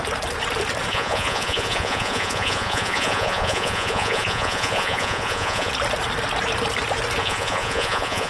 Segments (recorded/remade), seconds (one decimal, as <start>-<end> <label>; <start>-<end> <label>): 0.0-0.9 recorded; 0.9-5.7 remade; 5.7-7.2 recorded; 7.2-8.3 remade